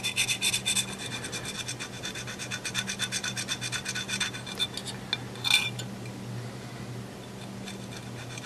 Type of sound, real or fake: real